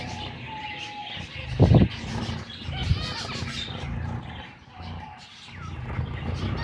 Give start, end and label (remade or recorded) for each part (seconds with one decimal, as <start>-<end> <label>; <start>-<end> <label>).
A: 0.0-6.6 recorded